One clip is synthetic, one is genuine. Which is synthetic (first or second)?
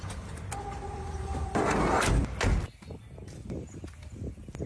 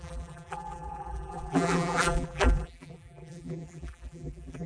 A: second